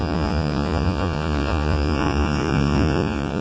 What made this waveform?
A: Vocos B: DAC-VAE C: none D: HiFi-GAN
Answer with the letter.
A